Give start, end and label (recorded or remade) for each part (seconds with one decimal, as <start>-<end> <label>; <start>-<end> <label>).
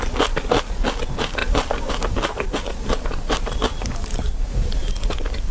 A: 0.0-5.5 recorded